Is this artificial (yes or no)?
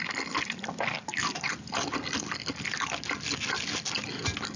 no